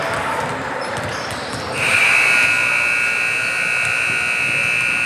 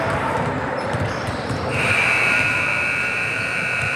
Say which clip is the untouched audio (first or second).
first